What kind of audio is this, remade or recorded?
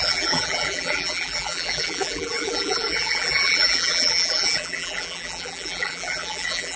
remade